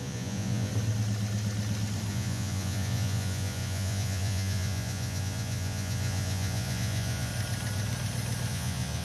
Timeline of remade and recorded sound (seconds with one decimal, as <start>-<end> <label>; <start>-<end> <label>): 0.0-0.7 remade; 0.7-2.1 recorded; 2.1-7.3 remade; 7.3-8.5 recorded; 8.5-9.0 remade